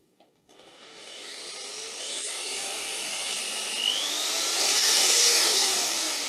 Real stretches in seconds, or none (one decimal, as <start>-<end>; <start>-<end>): 1.4-2.0; 3.4-4.6